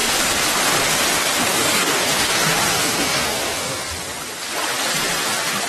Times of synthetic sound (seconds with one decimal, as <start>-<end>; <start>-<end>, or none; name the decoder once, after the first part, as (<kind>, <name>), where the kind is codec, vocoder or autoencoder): 1.5-3.9 (codec, DAC)